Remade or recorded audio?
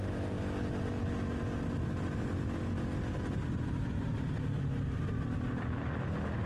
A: recorded